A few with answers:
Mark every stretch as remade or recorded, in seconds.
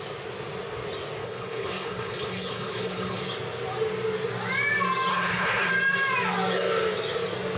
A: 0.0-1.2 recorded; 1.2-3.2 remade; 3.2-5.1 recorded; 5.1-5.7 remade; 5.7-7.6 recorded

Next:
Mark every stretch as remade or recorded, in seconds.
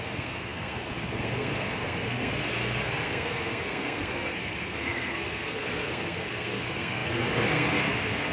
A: 0.0-8.3 remade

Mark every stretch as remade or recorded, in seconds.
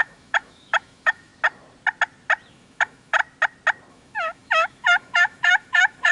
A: 0.0-1.3 remade; 1.3-2.5 recorded; 2.5-3.2 remade; 3.2-3.9 recorded; 3.9-6.1 remade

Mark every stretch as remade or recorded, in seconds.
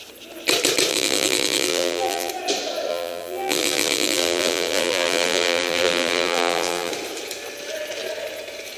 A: 0.0-0.9 recorded; 0.9-2.3 remade; 2.3-2.9 recorded; 2.9-6.9 remade; 6.9-8.8 recorded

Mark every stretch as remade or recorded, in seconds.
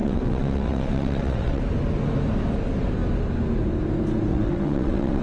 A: 0.0-1.6 remade; 1.6-4.3 recorded; 4.3-5.2 remade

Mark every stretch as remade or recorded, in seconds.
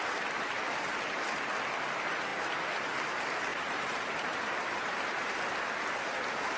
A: 0.0-3.5 recorded; 3.5-5.4 remade; 5.4-6.6 recorded